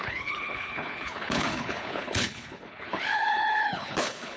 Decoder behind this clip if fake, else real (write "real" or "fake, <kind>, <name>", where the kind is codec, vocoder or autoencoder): fake, codec, HILCodec